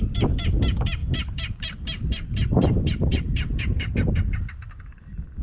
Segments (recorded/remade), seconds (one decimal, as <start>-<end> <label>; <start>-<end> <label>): 0.0-1.0 recorded; 1.0-3.9 remade; 3.9-5.4 recorded